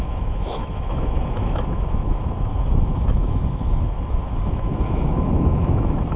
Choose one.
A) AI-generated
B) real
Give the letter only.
A